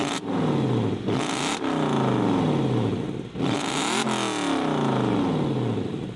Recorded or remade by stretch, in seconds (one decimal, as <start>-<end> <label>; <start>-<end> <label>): 0.0-6.2 recorded